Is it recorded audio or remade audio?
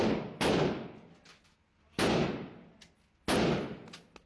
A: recorded